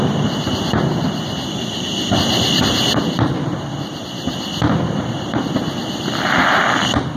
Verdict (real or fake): real